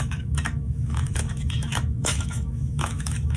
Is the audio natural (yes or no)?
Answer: no